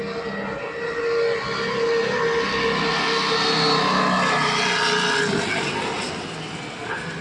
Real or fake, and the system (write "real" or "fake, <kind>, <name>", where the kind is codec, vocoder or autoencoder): real